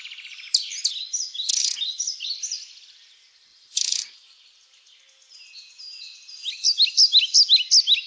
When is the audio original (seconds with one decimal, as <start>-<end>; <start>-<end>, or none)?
0.0-3.5; 5.0-8.1